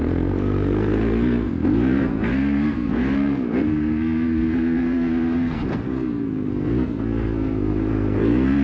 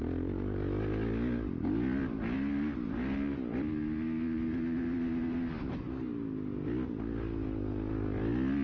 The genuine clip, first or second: second